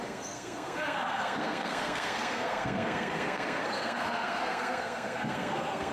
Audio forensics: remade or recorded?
remade